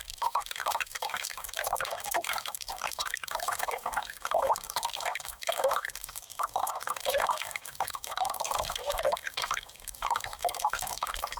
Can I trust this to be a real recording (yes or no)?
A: no